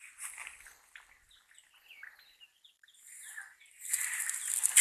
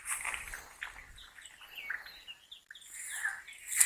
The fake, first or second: first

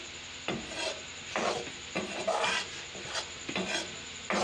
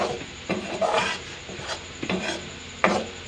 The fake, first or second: second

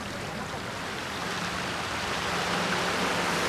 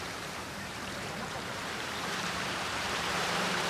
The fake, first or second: second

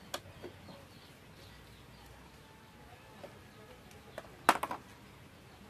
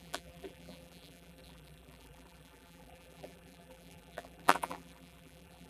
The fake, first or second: second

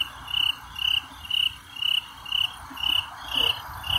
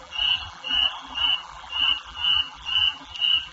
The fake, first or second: second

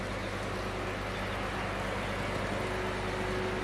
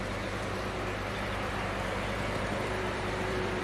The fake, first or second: second